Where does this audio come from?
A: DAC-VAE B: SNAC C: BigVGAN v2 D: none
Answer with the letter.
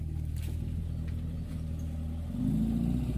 D